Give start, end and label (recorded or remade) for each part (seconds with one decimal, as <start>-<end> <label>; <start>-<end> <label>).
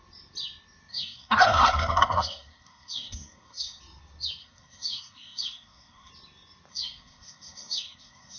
0.0-0.9 recorded; 0.9-3.8 remade; 3.8-4.4 recorded; 4.4-6.1 remade; 6.1-6.7 recorded; 6.7-8.4 remade